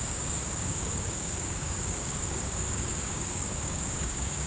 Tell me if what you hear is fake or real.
fake